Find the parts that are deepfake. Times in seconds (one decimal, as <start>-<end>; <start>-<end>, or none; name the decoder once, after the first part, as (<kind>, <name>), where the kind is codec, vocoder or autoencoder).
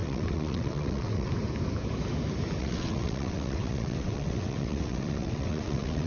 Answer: 0.0-1.3 (vocoder, WaveNeXt); 2.6-6.1